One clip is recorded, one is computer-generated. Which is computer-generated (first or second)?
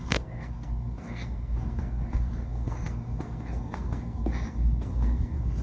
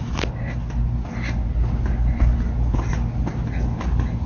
first